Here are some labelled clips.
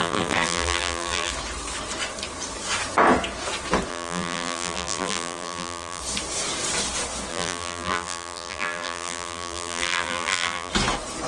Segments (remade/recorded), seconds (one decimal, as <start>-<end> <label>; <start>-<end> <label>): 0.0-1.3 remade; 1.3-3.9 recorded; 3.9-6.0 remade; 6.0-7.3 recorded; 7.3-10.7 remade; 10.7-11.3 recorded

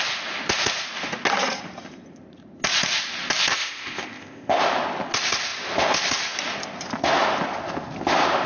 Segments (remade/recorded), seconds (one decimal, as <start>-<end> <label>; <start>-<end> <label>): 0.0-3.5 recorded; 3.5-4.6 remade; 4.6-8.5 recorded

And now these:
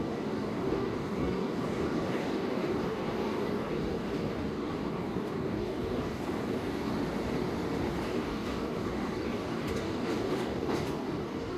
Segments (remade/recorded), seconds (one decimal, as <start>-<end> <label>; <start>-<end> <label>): 0.0-6.9 remade; 6.9-7.9 recorded; 7.9-11.6 remade